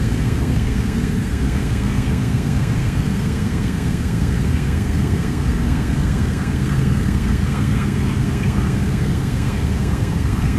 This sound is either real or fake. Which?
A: fake